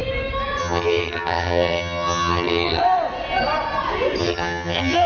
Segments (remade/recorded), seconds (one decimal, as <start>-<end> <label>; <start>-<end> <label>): 0.0-0.6 recorded; 0.6-2.8 remade; 2.8-4.2 recorded; 4.2-5.1 remade